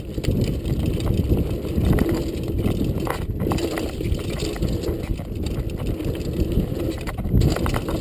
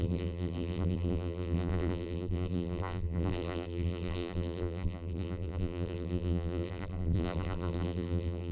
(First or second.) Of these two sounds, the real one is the first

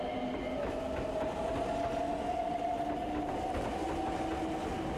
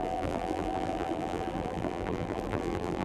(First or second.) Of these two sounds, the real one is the first